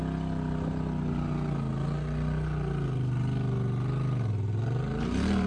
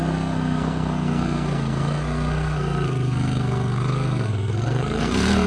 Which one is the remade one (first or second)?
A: second